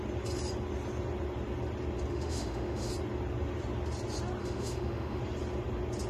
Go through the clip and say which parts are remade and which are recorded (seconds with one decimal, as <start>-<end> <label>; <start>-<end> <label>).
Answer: 0.0-2.1 recorded; 2.1-2.9 remade; 2.9-4.4 recorded; 4.4-5.2 remade; 5.2-6.1 recorded